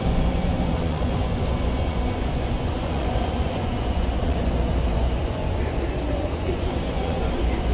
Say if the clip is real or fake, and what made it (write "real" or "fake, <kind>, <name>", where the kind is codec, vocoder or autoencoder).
fake, vocoder, Vocos